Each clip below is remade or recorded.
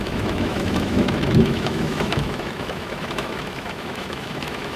remade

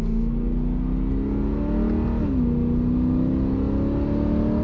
recorded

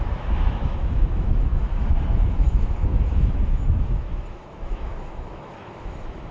remade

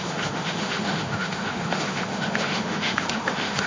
remade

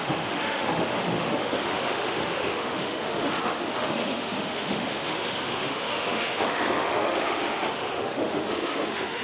remade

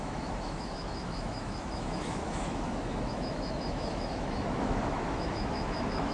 remade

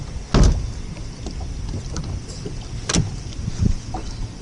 recorded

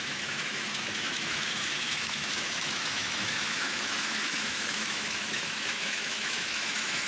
remade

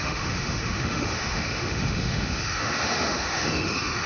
remade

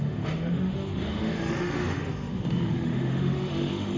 remade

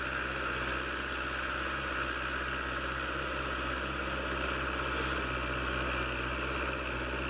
recorded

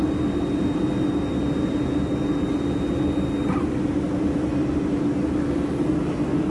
recorded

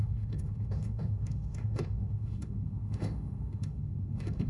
remade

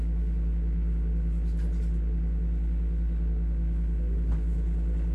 recorded